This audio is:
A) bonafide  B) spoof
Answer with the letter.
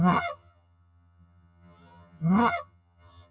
B